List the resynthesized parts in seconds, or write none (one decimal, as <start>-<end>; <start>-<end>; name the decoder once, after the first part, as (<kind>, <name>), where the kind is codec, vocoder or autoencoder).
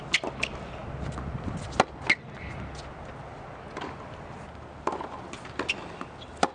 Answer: none